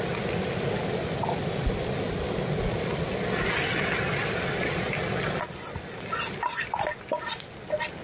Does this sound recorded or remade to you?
recorded